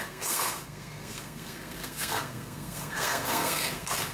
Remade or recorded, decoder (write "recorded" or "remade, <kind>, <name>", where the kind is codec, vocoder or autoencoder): remade, codec, SNAC